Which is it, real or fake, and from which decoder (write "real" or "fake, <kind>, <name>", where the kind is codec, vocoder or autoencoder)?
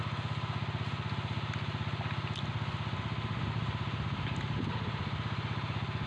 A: real